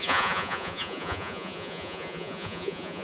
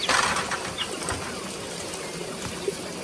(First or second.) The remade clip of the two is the first